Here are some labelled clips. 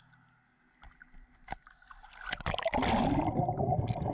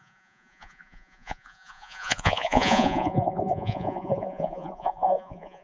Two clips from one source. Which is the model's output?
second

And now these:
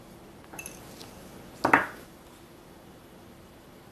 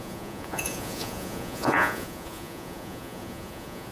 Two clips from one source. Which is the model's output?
second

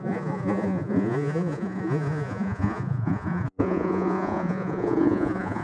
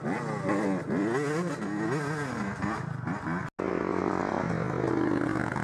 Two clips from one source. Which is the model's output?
first